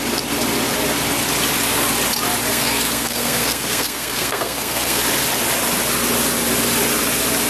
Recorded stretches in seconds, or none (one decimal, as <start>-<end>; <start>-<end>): 0.0-2.5; 5.0-7.5